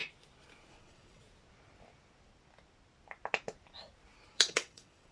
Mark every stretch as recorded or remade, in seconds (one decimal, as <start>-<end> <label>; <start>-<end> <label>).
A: 0.0-0.7 recorded; 0.7-1.2 remade; 1.2-4.3 recorded; 4.3-5.1 remade